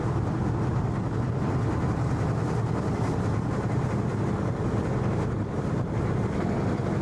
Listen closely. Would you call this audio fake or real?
real